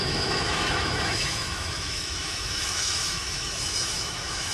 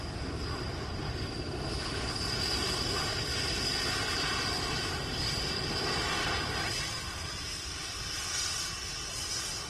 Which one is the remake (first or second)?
first